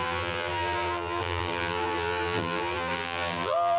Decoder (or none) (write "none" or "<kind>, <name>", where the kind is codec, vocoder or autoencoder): vocoder, BigVGAN v2